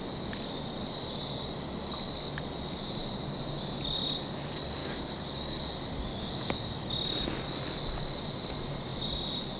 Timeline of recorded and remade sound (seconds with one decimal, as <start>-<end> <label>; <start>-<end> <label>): 0.0-4.8 recorded; 4.8-5.6 remade; 5.6-6.1 recorded; 6.1-6.6 remade; 6.6-9.6 recorded